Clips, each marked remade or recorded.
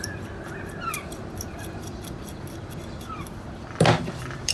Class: remade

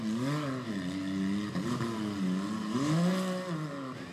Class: recorded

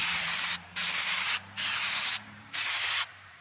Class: remade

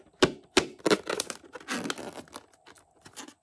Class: recorded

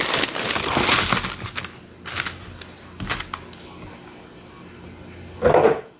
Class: recorded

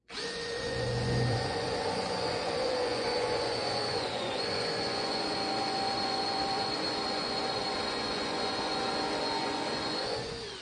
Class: remade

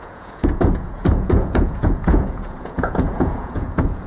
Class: remade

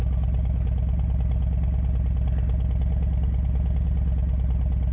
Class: recorded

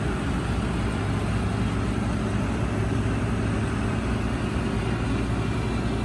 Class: recorded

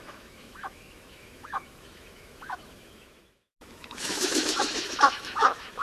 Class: remade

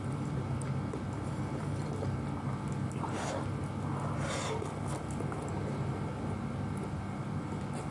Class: recorded